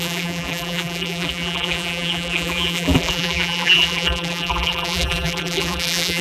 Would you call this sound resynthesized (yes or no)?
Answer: yes